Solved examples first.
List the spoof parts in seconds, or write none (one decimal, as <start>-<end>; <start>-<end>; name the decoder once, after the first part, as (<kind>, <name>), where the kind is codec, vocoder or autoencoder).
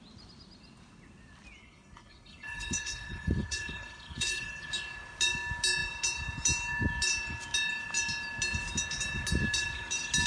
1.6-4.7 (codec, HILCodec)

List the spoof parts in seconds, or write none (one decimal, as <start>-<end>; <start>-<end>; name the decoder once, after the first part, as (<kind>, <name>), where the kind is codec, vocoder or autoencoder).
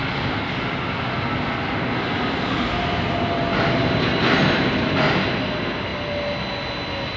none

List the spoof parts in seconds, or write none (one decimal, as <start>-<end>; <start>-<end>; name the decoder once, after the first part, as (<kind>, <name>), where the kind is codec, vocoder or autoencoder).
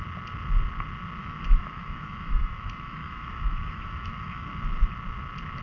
1.2-4.6 (autoencoder, DAC-VAE)